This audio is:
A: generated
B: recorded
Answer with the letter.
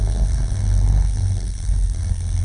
A